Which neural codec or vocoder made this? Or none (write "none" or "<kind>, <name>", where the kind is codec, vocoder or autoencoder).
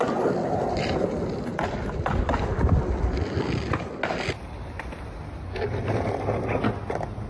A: none